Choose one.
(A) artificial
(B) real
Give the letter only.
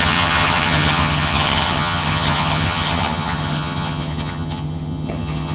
A